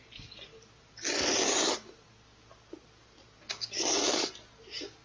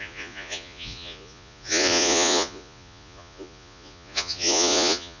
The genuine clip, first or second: first